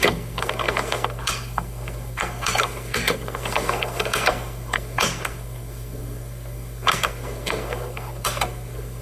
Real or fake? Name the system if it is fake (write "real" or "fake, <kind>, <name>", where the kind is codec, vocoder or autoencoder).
fake, codec, SNAC